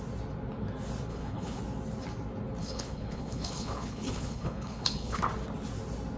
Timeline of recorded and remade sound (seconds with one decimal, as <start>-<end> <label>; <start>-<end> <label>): 0.0-1.1 recorded; 1.1-1.6 remade; 1.6-2.6 recorded; 2.6-5.2 remade; 5.2-6.2 recorded